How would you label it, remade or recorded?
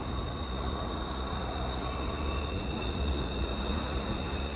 remade